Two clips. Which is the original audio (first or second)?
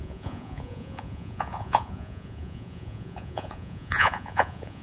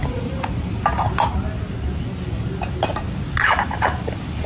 second